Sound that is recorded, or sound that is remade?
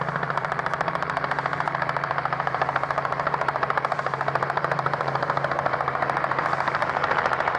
remade